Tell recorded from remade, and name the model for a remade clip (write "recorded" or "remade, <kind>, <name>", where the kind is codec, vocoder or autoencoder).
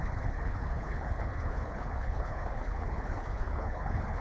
remade, codec, HILCodec